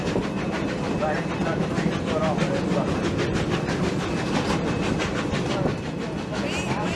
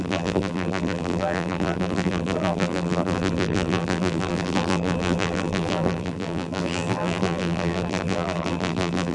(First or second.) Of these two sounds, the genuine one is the first